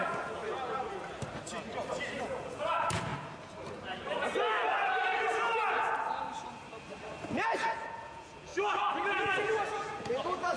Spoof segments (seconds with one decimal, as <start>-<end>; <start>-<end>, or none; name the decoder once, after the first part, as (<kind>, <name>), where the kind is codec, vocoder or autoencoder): 0.0-0.4 (vocoder, Vocos); 2.2-3.1; 7.3-8.5; 9.1-10.6